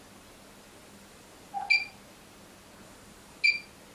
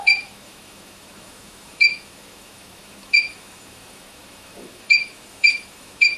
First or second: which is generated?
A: second